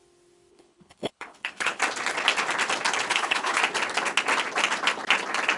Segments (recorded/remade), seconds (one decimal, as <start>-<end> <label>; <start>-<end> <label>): 0.0-0.5 recorded; 0.5-1.8 remade; 1.8-3.1 recorded; 3.1-3.6 remade; 3.6-5.6 recorded